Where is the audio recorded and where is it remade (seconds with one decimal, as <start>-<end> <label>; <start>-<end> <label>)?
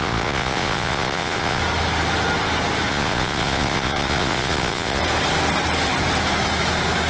0.0-1.6 remade; 1.6-2.9 recorded; 2.9-5.0 remade; 5.0-7.1 recorded